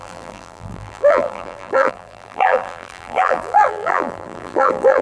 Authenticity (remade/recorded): remade